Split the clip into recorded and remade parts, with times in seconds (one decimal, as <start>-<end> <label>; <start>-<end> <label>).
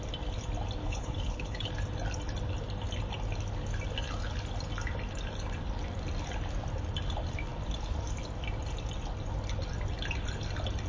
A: 0.0-0.8 recorded; 0.8-1.7 remade; 1.7-10.9 recorded